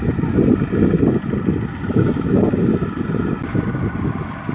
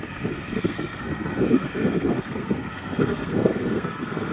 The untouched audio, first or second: first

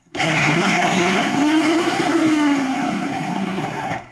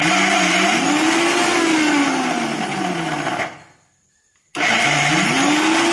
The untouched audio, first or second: second